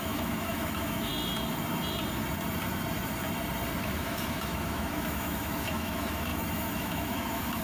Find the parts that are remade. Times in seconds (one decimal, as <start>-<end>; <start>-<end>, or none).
0.0-1.1; 3.8-7.6